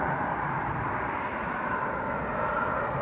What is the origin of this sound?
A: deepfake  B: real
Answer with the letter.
B